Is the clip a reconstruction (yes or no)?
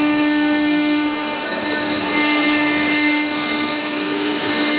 yes